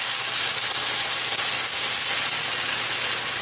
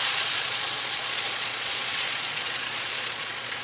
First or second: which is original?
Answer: first